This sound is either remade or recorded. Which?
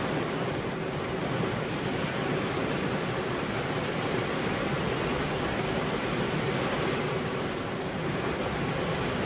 recorded